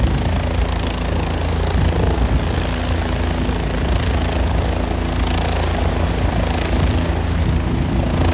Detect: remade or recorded recorded